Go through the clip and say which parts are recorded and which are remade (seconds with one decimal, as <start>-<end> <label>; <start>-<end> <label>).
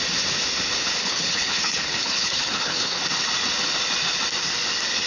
0.0-1.0 recorded; 1.0-3.0 remade; 3.0-5.1 recorded